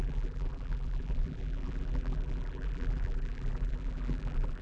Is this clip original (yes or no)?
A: no